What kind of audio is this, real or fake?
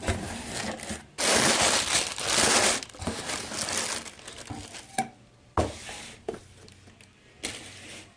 real